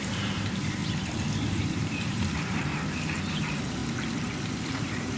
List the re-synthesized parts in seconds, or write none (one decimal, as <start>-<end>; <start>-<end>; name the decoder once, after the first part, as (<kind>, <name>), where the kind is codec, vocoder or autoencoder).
0.0-0.8 (vocoder, BigVGAN v2); 1.6-2.7; 3.3-3.8; 4.8-5.2